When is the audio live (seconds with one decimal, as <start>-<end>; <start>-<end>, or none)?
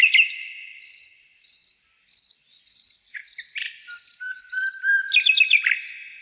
0.0-6.2